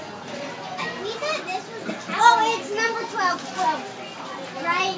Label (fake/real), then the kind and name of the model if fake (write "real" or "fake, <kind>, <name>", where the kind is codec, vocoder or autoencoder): real